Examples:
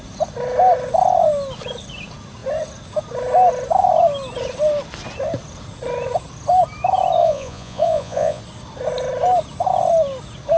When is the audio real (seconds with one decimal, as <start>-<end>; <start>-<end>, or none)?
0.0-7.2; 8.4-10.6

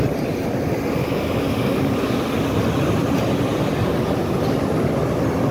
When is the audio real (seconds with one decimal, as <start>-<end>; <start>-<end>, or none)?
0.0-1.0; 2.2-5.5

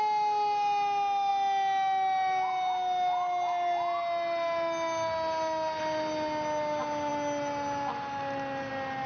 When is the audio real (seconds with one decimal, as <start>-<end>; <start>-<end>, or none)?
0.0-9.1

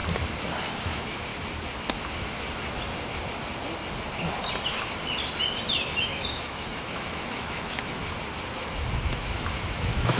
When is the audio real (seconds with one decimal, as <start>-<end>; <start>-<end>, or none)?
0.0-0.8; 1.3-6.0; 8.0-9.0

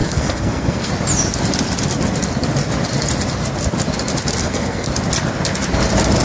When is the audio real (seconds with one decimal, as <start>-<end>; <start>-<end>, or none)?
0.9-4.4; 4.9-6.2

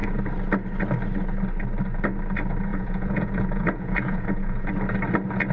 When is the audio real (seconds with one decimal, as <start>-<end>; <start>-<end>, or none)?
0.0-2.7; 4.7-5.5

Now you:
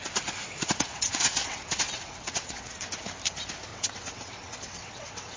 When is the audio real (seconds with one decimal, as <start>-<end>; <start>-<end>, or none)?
0.0-0.6; 2.8-3.7

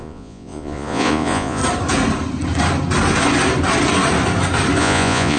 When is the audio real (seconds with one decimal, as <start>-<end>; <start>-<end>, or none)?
1.6-4.8